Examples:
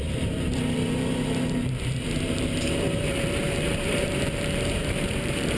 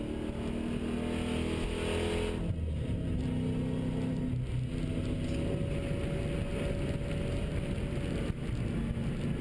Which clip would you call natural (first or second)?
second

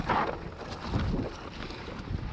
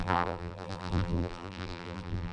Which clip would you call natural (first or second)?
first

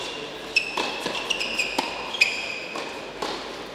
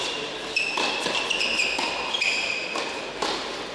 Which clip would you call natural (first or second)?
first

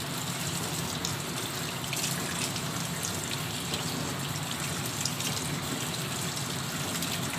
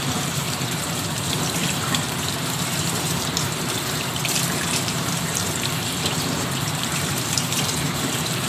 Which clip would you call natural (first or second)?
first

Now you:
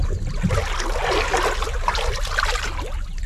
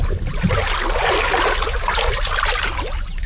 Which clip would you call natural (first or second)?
first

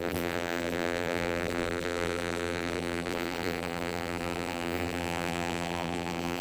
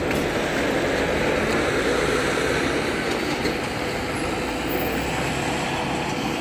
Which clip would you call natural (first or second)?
second